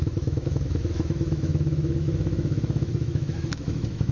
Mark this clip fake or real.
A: fake